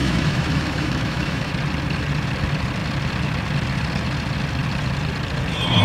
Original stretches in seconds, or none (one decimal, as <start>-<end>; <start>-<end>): 1.5-5.8